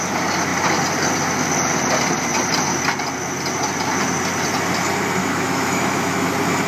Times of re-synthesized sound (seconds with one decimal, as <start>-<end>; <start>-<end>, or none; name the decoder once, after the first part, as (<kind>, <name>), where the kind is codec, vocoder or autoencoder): 5.2-6.3 (autoencoder, DAC-VAE)